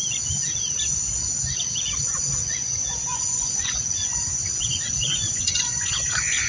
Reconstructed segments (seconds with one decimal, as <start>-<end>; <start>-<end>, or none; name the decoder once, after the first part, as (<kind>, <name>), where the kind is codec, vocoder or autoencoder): 2.6-6.5 (vocoder, Vocos)